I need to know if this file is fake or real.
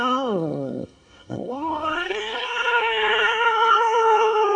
fake